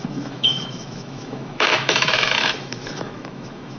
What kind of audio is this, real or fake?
fake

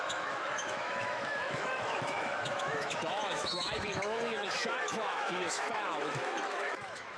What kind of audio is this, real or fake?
fake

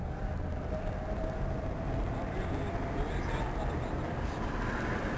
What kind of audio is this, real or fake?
real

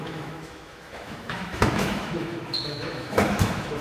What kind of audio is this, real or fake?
fake